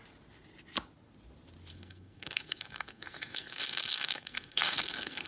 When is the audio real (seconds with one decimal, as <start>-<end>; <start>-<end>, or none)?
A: 0.0-1.7

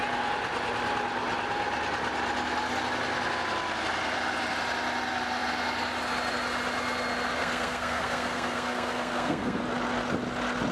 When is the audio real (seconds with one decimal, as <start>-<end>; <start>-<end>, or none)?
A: 0.0-7.4; 9.6-10.7

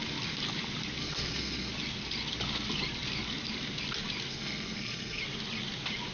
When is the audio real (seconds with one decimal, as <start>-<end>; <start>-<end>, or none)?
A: 0.0-1.0; 1.7-4.3; 5.2-6.1

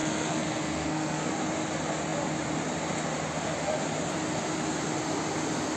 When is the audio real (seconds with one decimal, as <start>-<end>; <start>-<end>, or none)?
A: 1.3-5.8